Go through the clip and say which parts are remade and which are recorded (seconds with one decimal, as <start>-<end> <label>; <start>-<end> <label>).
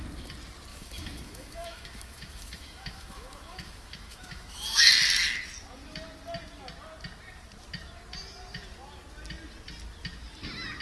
0.0-0.7 recorded; 0.7-4.9 remade; 4.9-10.8 recorded